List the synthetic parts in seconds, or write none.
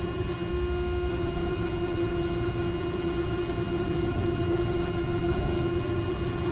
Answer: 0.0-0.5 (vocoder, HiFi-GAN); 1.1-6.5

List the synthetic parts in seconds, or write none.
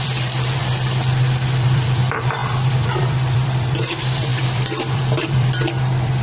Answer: 0.0-0.6 (vocoder, BigVGAN v2); 1.5-6.2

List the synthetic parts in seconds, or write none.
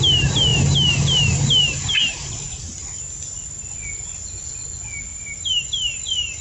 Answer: 5.1-6.4 (vocoder, BigVGAN v2)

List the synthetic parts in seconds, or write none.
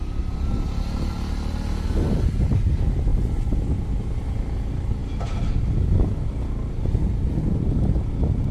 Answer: none